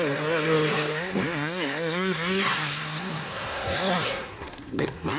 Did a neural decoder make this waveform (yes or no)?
yes